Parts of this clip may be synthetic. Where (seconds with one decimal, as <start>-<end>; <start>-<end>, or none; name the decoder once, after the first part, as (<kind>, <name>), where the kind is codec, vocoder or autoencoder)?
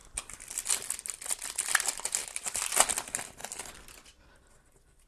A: none